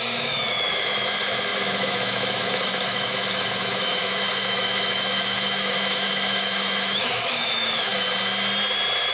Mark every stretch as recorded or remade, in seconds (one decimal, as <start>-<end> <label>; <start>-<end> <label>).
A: 0.0-7.9 remade; 7.9-9.1 recorded